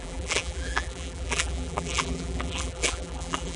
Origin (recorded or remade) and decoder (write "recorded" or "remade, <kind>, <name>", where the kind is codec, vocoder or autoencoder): remade, vocoder, BigVGAN v2